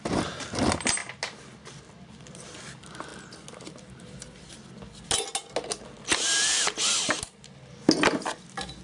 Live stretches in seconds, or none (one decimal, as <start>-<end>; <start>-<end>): 0.0-8.8